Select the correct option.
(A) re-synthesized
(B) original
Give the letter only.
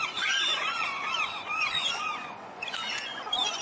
A